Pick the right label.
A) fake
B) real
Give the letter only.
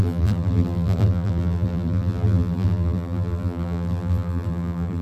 A